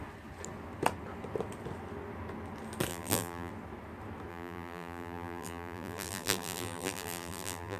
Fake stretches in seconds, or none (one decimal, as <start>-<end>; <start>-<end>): 2.9-3.5; 4.3-7.8